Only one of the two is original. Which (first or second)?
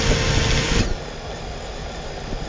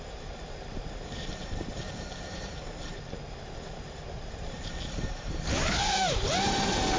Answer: first